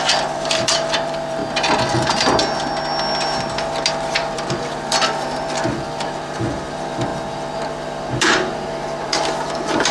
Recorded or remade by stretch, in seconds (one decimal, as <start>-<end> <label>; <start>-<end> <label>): 0.0-1.4 remade; 1.4-3.9 recorded; 3.9-9.9 remade